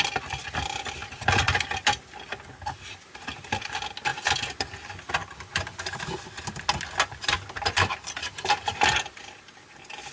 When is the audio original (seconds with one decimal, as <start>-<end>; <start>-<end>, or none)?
0.0-8.2; 8.8-10.1